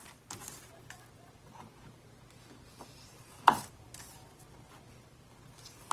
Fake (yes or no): no